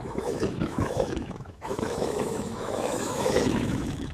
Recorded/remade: remade